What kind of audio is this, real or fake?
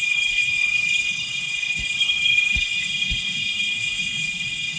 fake